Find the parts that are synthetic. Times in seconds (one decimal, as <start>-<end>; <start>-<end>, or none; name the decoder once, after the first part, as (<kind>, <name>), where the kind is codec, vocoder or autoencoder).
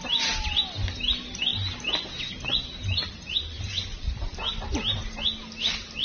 none